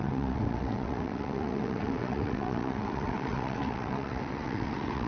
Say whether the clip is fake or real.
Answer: fake